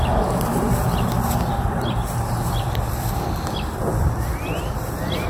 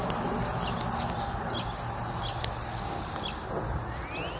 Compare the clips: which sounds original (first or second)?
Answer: second